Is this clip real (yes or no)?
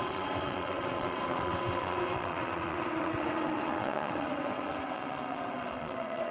no